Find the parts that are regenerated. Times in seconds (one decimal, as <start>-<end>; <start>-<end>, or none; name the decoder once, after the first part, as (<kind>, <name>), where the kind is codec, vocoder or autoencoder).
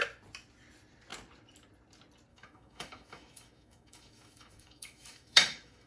2.3-5.9 (autoencoder, DAC-VAE)